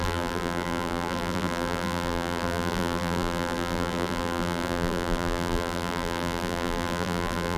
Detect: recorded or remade remade